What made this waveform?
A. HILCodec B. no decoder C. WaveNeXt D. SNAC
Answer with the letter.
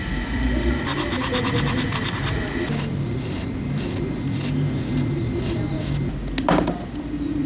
B